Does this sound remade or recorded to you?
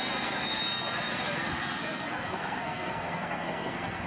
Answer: remade